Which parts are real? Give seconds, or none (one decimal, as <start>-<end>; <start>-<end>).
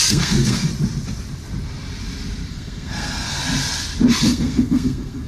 0.7-2.5; 3.4-4.2